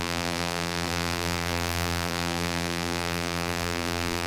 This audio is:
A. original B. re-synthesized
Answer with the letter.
B